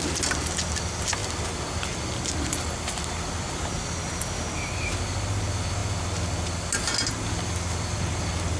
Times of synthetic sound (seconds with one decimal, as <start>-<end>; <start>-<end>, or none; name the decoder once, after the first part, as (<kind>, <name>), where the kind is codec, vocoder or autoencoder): none